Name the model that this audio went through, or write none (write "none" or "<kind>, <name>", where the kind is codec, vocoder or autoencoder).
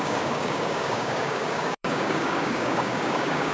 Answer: codec, DAC